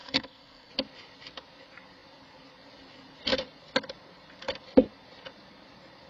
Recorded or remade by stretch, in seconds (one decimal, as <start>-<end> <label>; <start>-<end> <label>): 0.0-0.7 remade; 0.7-6.1 recorded

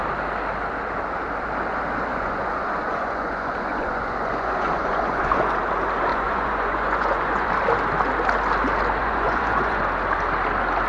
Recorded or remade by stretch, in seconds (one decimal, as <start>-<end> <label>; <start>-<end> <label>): 0.0-2.1 recorded; 2.1-5.5 remade; 5.5-6.1 recorded; 6.1-7.5 remade; 7.5-9.0 recorded; 9.0-9.8 remade; 9.8-10.9 recorded

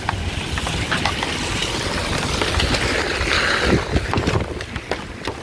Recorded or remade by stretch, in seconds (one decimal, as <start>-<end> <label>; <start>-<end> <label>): 0.0-5.4 recorded

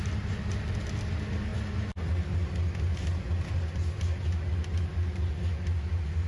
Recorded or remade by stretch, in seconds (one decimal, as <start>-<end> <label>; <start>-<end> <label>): 0.0-6.3 recorded

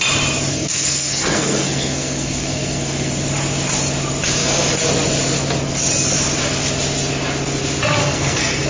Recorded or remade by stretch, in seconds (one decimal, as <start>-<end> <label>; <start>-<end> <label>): 0.0-0.5 recorded; 0.5-3.1 remade; 3.1-8.0 recorded; 8.0-8.7 remade

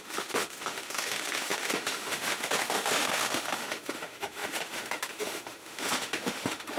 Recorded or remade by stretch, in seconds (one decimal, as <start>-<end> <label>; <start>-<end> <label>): 0.0-6.8 remade